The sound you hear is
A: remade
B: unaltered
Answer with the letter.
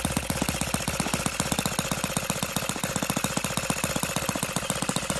B